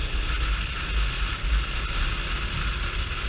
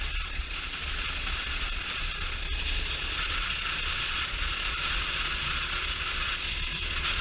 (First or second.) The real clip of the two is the first